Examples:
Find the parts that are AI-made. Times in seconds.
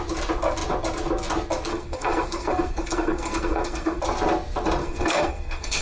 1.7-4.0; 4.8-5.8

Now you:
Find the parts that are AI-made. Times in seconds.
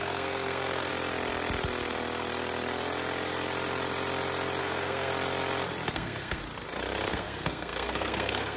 0.0-0.9; 4.6-5.1; 5.9-6.4; 7.1-8.6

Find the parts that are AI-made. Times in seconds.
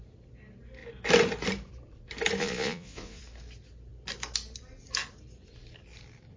2.4-3.2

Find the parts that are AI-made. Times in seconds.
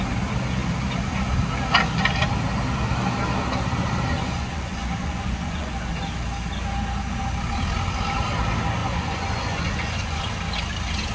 4.1-5.7; 8.8-10.2